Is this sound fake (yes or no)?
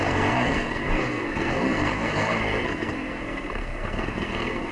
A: yes